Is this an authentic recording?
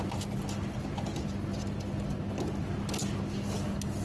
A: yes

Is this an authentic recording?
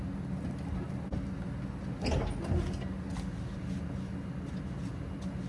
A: yes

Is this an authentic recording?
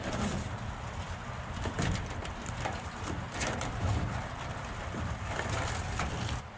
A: no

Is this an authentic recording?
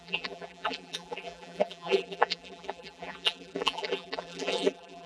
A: no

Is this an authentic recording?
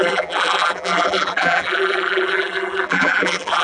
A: no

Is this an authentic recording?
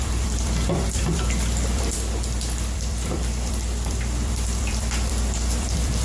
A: no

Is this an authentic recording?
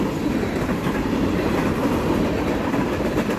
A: no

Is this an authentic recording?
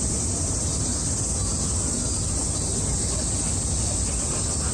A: yes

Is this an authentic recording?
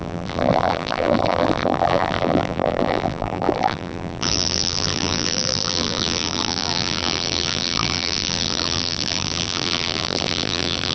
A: no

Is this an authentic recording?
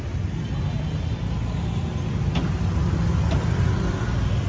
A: yes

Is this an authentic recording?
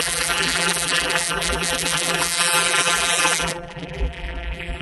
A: no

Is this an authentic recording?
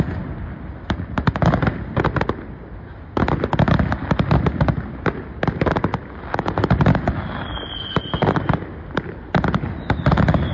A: yes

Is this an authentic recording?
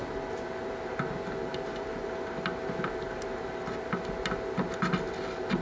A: yes